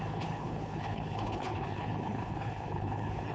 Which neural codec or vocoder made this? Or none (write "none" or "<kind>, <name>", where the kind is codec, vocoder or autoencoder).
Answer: codec, HILCodec